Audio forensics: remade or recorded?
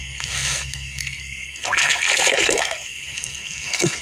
remade